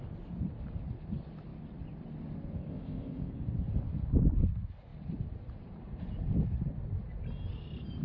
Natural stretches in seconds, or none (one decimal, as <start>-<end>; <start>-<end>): 0.0-2.7; 3.3-8.0